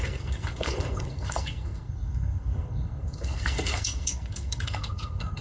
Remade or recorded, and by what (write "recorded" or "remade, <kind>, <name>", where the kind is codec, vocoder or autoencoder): remade, codec, SNAC